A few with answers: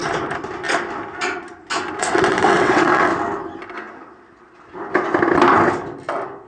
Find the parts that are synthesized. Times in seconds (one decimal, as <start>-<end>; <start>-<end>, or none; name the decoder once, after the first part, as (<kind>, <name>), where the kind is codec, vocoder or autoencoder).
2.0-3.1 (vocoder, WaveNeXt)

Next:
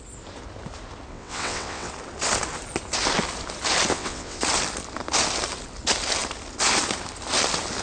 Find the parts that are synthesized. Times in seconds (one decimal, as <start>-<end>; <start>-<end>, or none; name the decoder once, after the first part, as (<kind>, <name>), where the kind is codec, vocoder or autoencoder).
1.1-1.9 (vocoder, WaveNeXt); 3.9-4.4

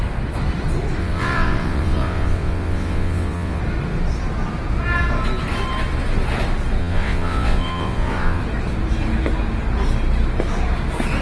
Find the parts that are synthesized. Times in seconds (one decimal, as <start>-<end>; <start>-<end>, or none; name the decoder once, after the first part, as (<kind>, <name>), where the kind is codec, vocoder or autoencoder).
1.0-3.6 (vocoder, WaveNeXt); 6.8-8.4

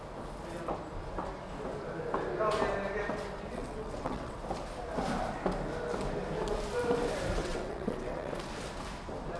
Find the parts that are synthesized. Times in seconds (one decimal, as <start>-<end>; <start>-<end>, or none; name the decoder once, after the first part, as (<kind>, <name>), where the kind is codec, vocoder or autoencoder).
3.5-4.4 (vocoder, WaveNeXt); 7.4-8.3

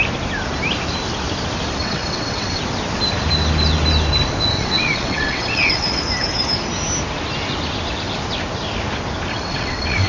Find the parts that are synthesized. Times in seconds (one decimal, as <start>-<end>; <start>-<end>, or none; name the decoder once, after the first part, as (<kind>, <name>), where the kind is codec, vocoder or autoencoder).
1.8-2.6 (vocoder, WaveNeXt); 4.5-6.0; 9.3-10.1